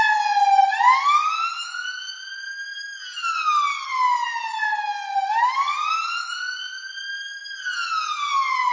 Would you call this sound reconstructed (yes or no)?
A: no